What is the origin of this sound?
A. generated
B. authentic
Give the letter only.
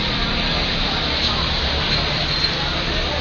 B